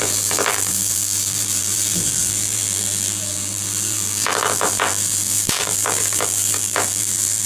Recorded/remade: remade